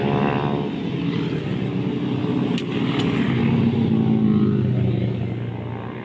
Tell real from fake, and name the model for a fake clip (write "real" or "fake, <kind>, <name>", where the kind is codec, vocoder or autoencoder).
real